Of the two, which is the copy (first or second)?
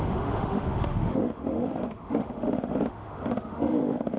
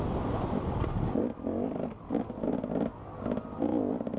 first